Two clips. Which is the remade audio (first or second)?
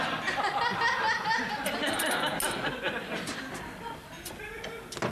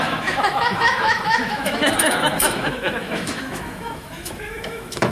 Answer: second